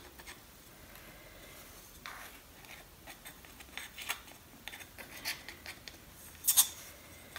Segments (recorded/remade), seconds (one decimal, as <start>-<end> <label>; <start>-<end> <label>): 0.0-7.4 recorded